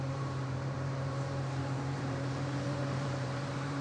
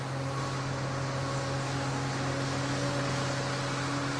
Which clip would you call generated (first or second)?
first